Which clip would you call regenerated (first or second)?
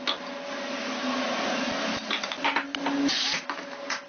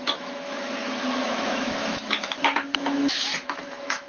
second